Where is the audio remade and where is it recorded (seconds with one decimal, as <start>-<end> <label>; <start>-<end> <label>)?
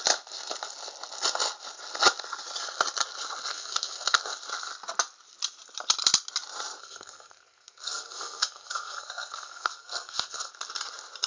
0.0-3.5 recorded; 3.5-4.2 remade; 4.2-6.8 recorded; 6.8-10.5 remade; 10.5-11.3 recorded